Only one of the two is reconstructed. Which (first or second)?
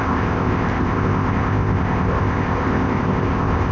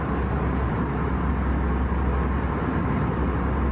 first